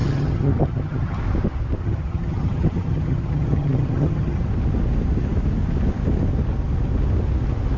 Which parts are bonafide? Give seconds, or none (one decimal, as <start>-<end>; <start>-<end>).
1.2-1.8; 4.4-7.8